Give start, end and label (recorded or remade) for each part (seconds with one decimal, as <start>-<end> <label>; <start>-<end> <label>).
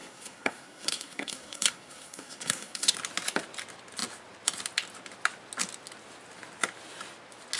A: 0.0-2.9 remade; 2.9-7.6 recorded